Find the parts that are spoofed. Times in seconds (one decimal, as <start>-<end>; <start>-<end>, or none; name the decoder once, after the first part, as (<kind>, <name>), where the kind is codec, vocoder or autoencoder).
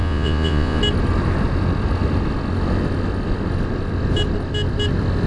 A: 0.0-0.8 (vocoder, Vocos)